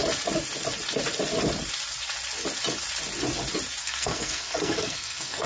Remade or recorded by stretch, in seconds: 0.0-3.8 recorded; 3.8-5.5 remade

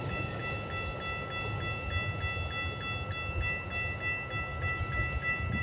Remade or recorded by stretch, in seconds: 0.0-5.6 recorded

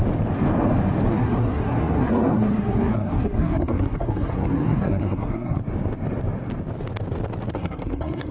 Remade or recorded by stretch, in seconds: 0.0-1.1 recorded; 1.1-5.6 remade; 5.6-7.5 recorded; 7.5-8.3 remade

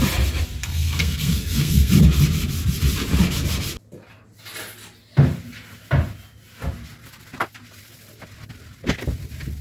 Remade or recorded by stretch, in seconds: 0.0-0.6 recorded; 0.6-1.9 remade; 1.9-9.6 recorded

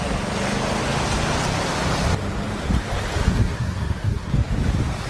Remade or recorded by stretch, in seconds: 0.0-3.2 recorded; 3.2-4.3 remade; 4.3-5.1 recorded

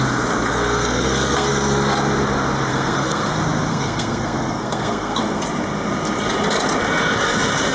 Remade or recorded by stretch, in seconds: 0.0-0.5 recorded; 0.5-1.5 remade; 1.5-2.7 recorded; 2.7-3.3 remade; 3.3-3.7 recorded; 3.7-5.4 remade; 5.4-7.7 recorded

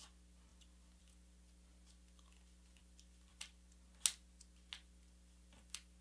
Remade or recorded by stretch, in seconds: 0.0-6.0 recorded

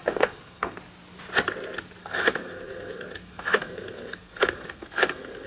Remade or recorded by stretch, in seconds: 0.0-0.8 remade; 0.8-2.0 recorded; 2.0-5.5 remade